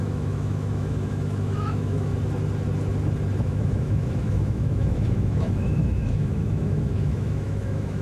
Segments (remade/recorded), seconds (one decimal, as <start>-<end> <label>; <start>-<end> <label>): 0.0-2.1 remade; 2.1-3.4 recorded; 3.4-8.0 remade